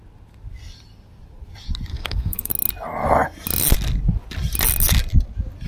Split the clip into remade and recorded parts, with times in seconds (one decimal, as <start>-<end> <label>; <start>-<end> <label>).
0.0-1.9 recorded; 1.9-2.5 remade; 2.5-5.7 recorded